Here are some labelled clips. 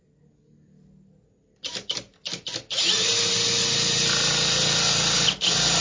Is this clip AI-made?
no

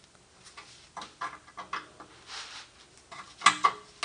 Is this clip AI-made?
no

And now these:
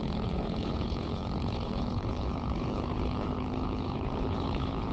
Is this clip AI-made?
yes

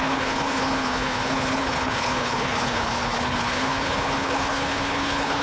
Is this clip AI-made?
yes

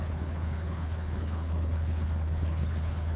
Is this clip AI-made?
yes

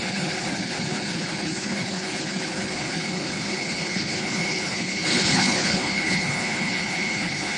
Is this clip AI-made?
yes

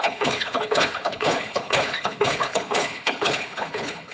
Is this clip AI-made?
yes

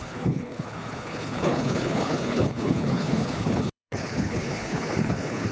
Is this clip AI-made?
yes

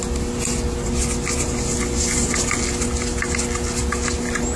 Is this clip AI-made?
no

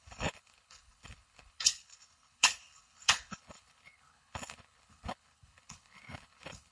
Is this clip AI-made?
yes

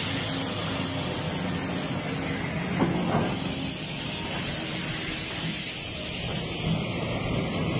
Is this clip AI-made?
no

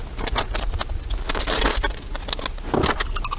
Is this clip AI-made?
no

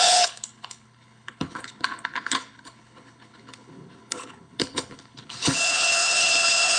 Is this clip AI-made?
yes